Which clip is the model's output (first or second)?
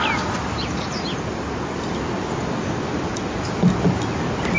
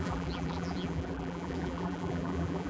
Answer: second